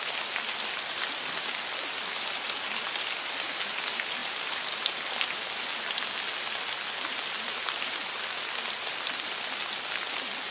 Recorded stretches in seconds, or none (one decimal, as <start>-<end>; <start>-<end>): 0.0-10.5